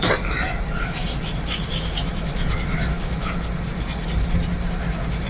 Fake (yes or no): yes